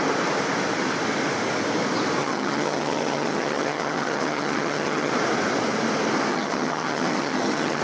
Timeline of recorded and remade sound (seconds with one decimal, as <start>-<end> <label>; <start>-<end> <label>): 0.0-2.2 recorded; 2.2-5.1 remade; 5.1-6.3 recorded; 6.3-7.8 remade